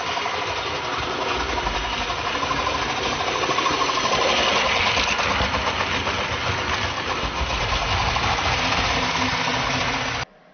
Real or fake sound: real